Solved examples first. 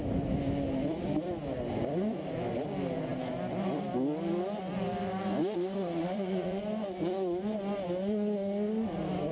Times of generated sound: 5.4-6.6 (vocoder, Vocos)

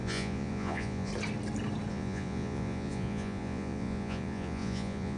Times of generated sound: 0.0-1.1 (vocoder, Vocos); 1.9-5.2

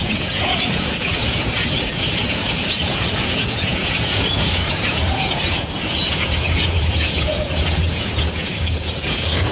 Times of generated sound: 0.0-9.5 (vocoder, Vocos)

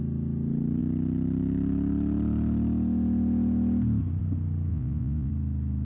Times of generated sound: 4.7-5.3 (vocoder, Vocos)

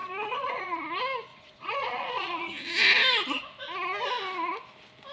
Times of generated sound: 0.0-0.8 (vocoder, Vocos); 1.3-2.5